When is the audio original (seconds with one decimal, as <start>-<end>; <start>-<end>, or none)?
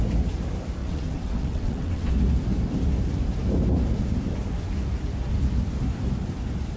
0.0-0.8; 2.1-6.8